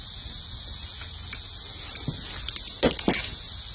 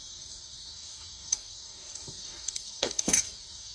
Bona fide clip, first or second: first